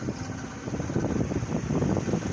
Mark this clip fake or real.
real